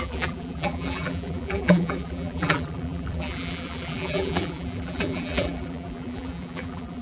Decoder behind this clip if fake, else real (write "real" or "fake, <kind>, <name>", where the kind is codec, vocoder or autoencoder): fake, vocoder, BigVGAN v2